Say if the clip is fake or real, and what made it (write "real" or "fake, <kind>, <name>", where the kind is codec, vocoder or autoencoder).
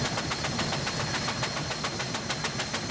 real